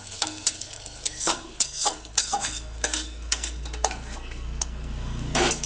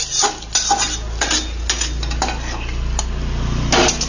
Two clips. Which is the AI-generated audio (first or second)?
first